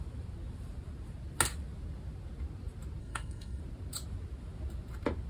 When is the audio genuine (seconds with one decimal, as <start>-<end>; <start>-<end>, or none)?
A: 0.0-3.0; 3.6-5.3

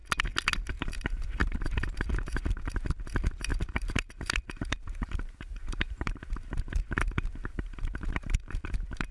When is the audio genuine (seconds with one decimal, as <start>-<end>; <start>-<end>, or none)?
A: 0.0-0.7

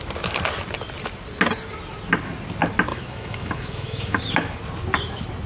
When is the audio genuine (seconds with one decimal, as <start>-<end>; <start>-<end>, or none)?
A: 0.0-2.9; 4.2-5.5

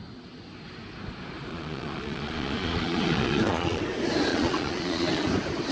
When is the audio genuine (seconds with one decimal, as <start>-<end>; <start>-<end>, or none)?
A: 0.0-1.5; 3.8-4.3; 5.3-5.7